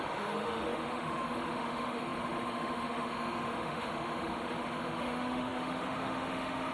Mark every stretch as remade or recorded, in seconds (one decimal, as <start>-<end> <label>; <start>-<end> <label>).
0.0-6.7 remade

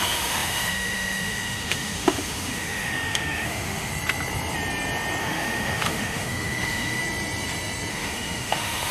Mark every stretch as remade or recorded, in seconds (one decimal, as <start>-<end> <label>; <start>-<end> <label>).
0.0-3.9 remade; 3.9-5.2 recorded; 5.2-7.0 remade; 7.0-7.9 recorded; 7.9-8.9 remade

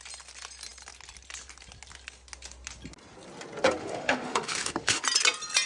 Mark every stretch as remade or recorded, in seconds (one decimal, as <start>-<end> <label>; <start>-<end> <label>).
0.0-3.8 recorded; 3.8-5.0 remade; 5.0-5.7 recorded

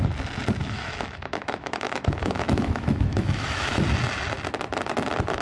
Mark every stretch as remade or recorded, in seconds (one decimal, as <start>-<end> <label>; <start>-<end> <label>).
0.0-0.6 recorded; 0.6-3.8 remade; 3.8-5.4 recorded

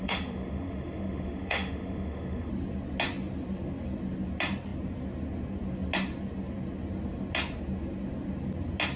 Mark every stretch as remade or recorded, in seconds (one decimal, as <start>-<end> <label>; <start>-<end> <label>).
0.0-2.5 remade; 2.5-9.0 recorded

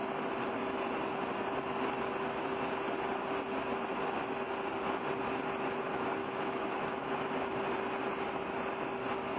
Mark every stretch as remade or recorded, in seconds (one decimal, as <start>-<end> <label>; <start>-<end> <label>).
0.0-6.2 recorded; 6.2-7.6 remade; 7.6-9.4 recorded

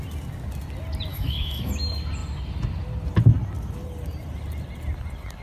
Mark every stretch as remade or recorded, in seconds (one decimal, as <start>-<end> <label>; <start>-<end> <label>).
0.0-1.1 recorded; 1.1-1.7 remade; 1.7-5.4 recorded